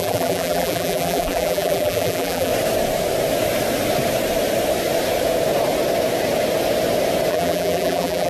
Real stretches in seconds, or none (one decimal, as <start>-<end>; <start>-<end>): 2.5-7.3